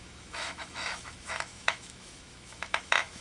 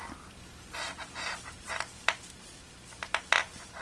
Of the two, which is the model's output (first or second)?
first